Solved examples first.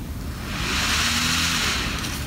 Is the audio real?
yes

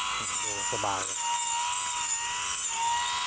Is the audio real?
yes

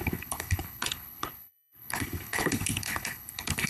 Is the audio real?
no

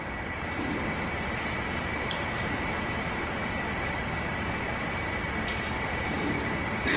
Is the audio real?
yes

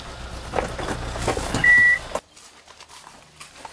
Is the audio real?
yes